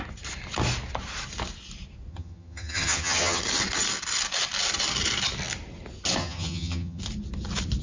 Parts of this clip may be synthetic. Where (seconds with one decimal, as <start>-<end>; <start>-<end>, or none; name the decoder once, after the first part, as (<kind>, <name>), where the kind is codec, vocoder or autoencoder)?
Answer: 2.1-3.4 (vocoder, HiFi-GAN); 6.2-7.0